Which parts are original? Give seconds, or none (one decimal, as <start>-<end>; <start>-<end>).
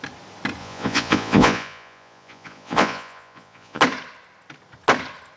0.0-0.6; 3.8-5.4